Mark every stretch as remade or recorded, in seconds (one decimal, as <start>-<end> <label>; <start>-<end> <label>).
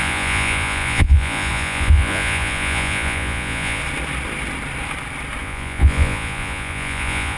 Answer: 0.0-3.8 remade; 3.8-5.4 recorded; 5.4-7.4 remade